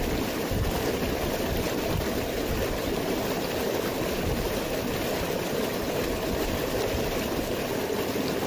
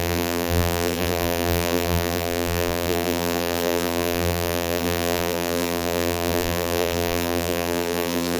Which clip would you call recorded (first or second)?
first